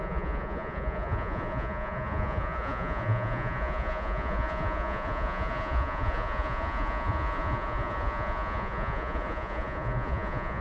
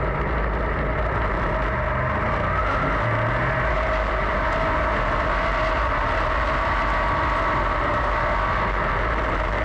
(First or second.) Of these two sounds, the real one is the second